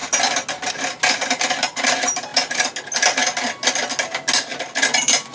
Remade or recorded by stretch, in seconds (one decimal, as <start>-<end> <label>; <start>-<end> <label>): 0.0-5.3 recorded